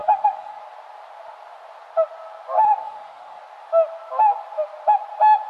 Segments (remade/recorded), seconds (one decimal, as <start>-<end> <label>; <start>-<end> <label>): 0.0-0.6 remade; 0.6-2.8 recorded; 2.8-3.4 remade; 3.4-5.5 recorded